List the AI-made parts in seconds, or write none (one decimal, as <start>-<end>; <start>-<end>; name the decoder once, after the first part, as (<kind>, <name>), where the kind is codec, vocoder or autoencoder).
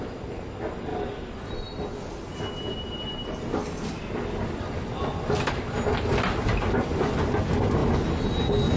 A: none